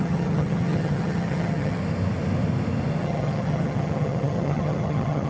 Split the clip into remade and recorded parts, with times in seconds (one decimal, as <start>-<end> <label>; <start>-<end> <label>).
0.0-1.8 remade; 1.8-3.0 recorded; 3.0-5.3 remade